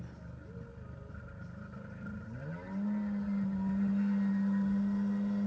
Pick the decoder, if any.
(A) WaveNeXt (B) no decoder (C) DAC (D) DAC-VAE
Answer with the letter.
B